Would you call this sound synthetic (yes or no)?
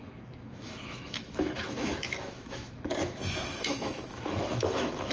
yes